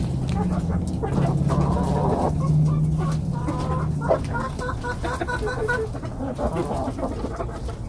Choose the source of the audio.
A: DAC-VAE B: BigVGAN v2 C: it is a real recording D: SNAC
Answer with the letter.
C